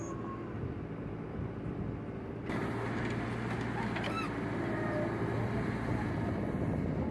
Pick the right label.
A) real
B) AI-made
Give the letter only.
A